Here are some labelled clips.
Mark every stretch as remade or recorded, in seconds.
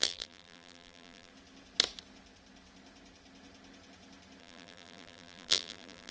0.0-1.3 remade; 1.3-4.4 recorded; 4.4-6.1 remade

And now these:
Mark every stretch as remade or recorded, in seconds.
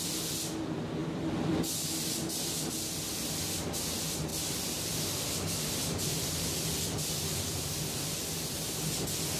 0.0-1.0 recorded; 1.0-3.3 remade; 3.3-4.3 recorded; 4.3-7.6 remade; 7.6-9.4 recorded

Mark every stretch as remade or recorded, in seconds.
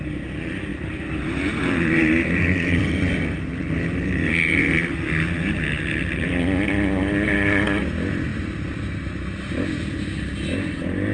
0.0-0.7 recorded; 0.7-4.6 remade; 4.6-8.3 recorded; 8.3-8.8 remade; 8.8-11.1 recorded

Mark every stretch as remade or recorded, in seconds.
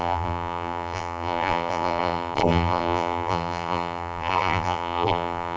0.0-5.6 remade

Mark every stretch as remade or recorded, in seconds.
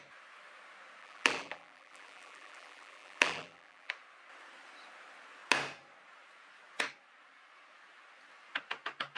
0.0-1.0 recorded; 1.0-3.9 remade; 3.9-9.2 recorded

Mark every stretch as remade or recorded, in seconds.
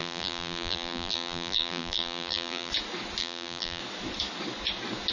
0.0-2.7 remade; 2.7-3.2 recorded; 3.2-3.8 remade; 3.8-5.1 recorded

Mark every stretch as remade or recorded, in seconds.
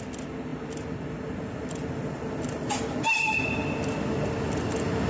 0.0-5.1 recorded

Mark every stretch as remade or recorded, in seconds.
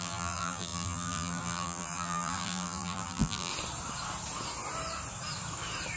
0.0-3.5 remade; 3.5-6.0 recorded